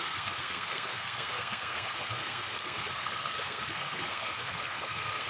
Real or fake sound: fake